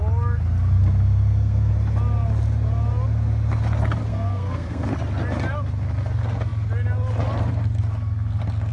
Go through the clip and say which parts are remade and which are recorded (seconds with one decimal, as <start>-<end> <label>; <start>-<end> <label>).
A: 0.0-0.8 recorded; 0.8-1.7 remade; 1.7-4.1 recorded; 4.1-4.9 remade; 4.9-8.7 recorded